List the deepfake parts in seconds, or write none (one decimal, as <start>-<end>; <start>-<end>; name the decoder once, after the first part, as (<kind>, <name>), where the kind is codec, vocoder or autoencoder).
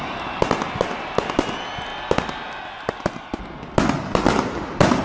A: none